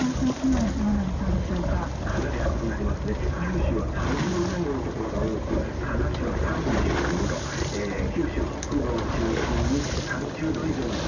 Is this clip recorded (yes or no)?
yes